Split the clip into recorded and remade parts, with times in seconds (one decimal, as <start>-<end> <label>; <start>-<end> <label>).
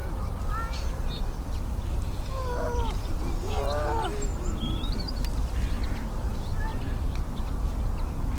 0.0-4.3 recorded; 4.3-5.3 remade; 5.3-6.7 recorded; 6.7-7.3 remade; 7.3-8.4 recorded